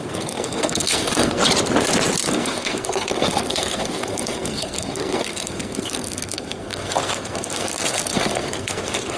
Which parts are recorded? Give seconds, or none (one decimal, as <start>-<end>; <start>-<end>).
1.4-2.3